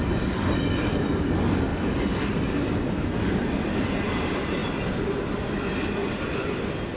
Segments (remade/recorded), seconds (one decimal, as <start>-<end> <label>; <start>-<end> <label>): 0.0-0.6 remade; 0.6-1.7 recorded; 1.7-3.2 remade; 3.2-4.6 recorded; 4.6-5.2 remade; 5.2-6.0 recorded; 6.0-7.0 remade